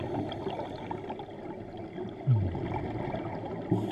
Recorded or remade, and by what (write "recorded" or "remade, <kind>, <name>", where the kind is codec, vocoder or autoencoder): recorded